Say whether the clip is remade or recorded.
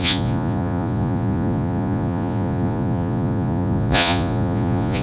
remade